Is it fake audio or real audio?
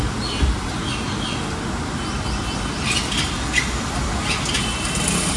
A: real